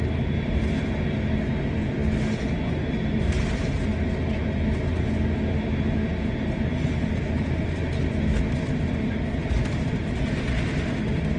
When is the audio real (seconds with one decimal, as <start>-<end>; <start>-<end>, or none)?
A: 0.0-11.4